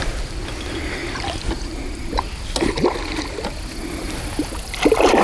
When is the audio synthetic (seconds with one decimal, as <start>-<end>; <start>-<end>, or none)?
none